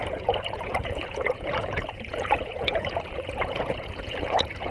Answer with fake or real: fake